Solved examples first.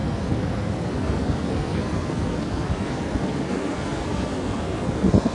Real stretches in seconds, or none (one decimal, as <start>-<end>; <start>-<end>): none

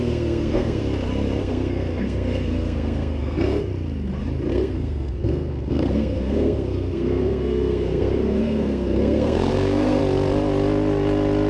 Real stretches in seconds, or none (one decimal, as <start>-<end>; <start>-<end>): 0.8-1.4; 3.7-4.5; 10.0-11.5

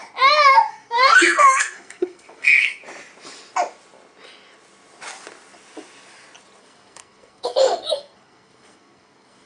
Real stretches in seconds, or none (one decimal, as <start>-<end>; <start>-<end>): 0.0-0.7; 2.8-6.6